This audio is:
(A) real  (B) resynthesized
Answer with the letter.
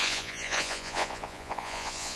B